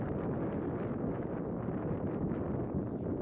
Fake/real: real